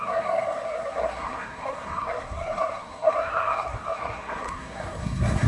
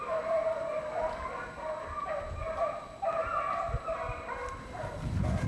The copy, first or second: first